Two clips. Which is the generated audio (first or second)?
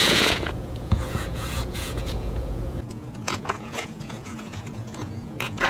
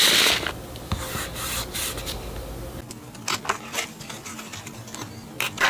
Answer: first